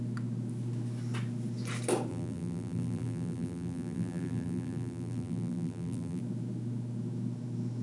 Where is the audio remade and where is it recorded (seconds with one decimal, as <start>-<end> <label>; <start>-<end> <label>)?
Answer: 0.0-2.1 recorded; 2.1-6.2 remade; 6.2-7.8 recorded